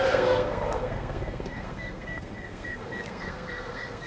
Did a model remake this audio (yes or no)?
yes